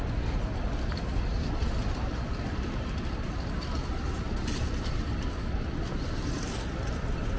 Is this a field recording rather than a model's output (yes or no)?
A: yes